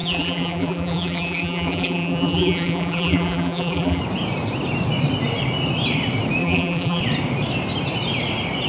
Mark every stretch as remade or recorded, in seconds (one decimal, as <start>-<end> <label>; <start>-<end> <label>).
0.0-4.0 remade; 4.0-6.4 recorded; 6.4-7.0 remade; 7.0-8.7 recorded